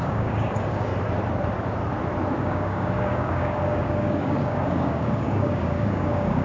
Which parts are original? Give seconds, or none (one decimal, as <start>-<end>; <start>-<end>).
0.9-2.4